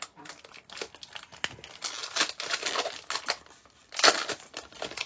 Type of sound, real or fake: real